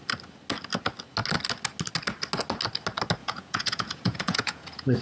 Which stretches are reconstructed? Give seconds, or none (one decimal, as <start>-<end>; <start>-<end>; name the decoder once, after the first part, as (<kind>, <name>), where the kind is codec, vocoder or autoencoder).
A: 3.2-5.0 (vocoder, Vocos)